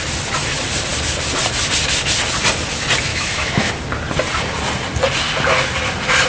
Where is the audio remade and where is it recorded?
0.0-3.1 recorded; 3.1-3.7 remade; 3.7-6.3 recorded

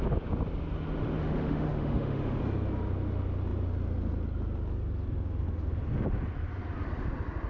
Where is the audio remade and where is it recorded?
0.0-1.2 recorded; 1.2-2.4 remade; 2.4-7.5 recorded

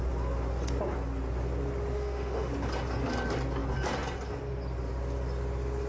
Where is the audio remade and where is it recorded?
0.0-1.9 recorded; 1.9-2.5 remade; 2.5-5.9 recorded

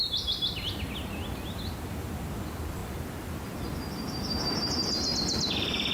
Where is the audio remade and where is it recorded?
0.0-5.9 recorded

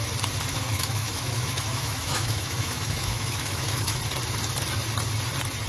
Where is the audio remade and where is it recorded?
0.0-0.7 recorded; 0.7-4.0 remade; 4.0-5.7 recorded

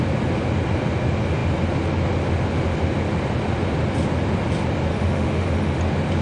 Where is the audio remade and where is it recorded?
0.0-4.9 recorded; 4.9-5.8 remade; 5.8-6.2 recorded

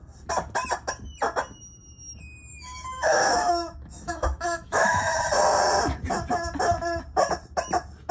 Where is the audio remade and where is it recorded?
0.0-2.5 recorded; 2.5-5.2 remade; 5.2-8.1 recorded